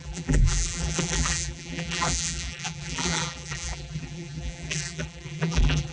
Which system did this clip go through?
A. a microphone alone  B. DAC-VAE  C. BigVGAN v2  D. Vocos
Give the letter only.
C